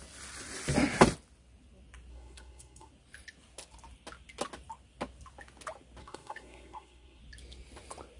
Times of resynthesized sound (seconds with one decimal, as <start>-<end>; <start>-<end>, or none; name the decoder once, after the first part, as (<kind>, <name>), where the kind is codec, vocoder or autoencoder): 2.1-2.9 (codec, SNAC); 6.0-7.2